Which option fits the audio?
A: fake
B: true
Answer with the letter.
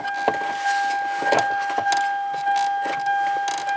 B